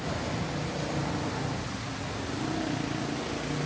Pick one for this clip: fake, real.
real